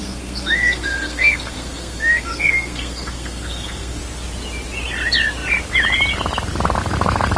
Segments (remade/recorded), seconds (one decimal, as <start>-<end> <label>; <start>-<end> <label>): 0.0-4.0 remade; 4.0-7.4 recorded